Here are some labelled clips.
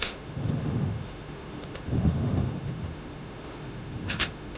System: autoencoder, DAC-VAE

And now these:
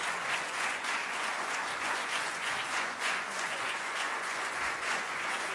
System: vocoder, Vocos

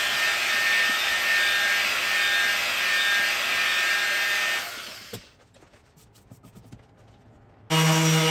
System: none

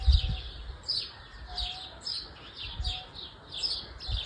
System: none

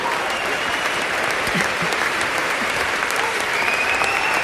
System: vocoder, BigVGAN v2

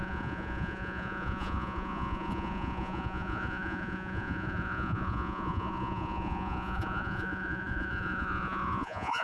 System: vocoder, Vocos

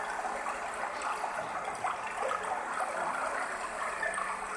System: none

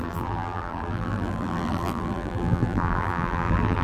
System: vocoder, BigVGAN v2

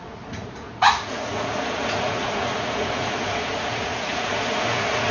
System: vocoder, Vocos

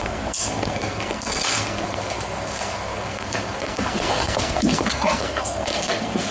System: codec, SNAC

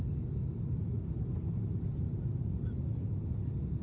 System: none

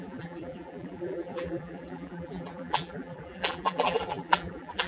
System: vocoder, BigVGAN v2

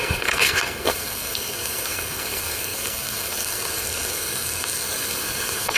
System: codec, SNAC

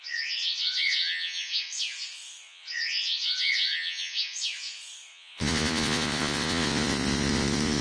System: vocoder, Vocos